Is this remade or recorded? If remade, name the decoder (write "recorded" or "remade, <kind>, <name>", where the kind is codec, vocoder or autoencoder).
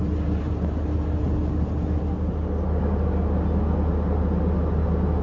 recorded